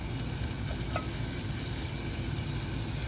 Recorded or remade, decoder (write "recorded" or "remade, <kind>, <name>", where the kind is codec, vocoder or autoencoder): recorded